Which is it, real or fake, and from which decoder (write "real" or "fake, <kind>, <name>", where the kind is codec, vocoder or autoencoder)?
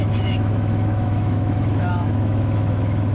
fake, autoencoder, DAC-VAE